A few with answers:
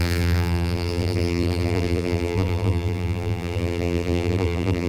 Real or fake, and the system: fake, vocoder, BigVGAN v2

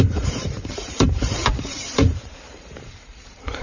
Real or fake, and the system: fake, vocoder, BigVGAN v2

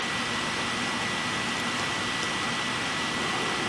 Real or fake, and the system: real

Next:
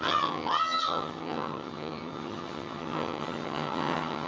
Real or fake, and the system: fake, vocoder, HiFi-GAN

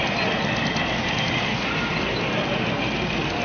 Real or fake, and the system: real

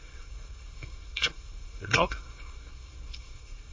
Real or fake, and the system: fake, codec, SNAC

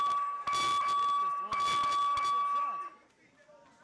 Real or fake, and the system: real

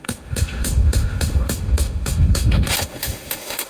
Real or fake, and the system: fake, autoencoder, DAC-VAE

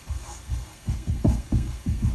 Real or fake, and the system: fake, codec, SNAC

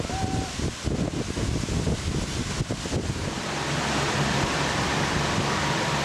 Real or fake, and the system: real